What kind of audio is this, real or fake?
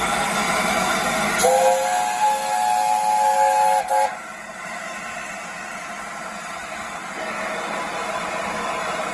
real